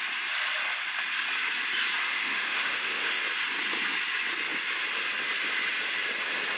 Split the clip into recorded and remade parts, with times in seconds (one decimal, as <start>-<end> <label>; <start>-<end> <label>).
0.0-2.1 recorded; 2.1-3.2 remade; 3.2-6.6 recorded